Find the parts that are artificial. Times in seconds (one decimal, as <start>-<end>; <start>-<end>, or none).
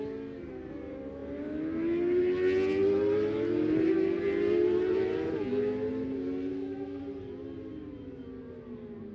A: 6.5-7.0